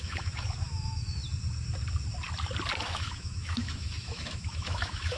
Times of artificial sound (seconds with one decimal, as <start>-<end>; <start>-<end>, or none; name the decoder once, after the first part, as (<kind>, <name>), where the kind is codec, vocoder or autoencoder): 0.0-1.2 (autoencoder, DAC-VAE); 2.8-5.2